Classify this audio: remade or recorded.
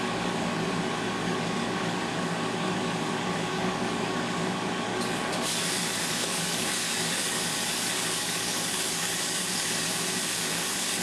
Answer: remade